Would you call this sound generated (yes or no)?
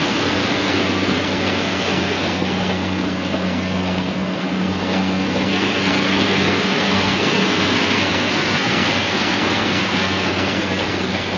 yes